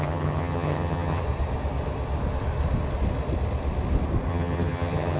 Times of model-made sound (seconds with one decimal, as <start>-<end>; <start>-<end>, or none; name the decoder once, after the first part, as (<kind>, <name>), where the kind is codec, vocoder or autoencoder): 0.0-1.2 (vocoder, HiFi-GAN); 4.3-5.2